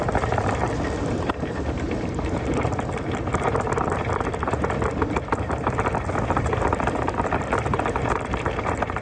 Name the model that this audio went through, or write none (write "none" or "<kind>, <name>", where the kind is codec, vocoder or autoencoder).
vocoder, BigVGAN v2